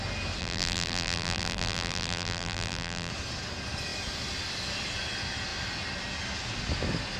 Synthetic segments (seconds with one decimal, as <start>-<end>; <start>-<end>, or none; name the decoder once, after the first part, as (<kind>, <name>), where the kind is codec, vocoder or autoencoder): 0.4-3.1 (vocoder, BigVGAN v2)